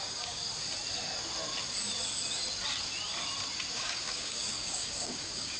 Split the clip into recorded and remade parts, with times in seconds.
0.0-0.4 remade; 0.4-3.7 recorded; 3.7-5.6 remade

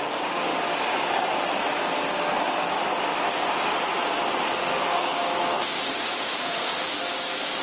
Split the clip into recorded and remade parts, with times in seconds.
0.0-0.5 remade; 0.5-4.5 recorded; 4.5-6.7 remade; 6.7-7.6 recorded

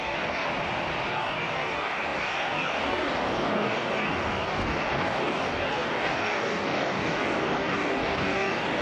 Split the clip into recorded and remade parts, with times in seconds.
0.0-0.5 remade; 0.5-1.1 recorded; 1.1-8.8 remade

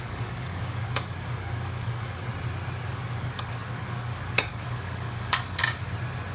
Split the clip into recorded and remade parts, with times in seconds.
0.0-2.3 remade; 2.3-2.9 recorded; 2.9-5.6 remade; 5.6-6.3 recorded

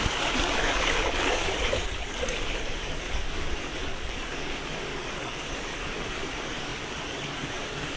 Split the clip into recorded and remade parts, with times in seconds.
0.0-8.0 remade

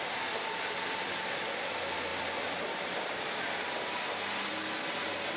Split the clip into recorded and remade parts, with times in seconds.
0.0-5.4 recorded

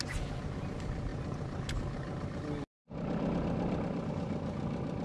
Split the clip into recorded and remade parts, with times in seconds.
0.0-5.0 recorded

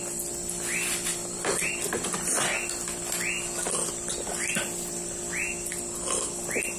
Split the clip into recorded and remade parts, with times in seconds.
0.0-6.8 recorded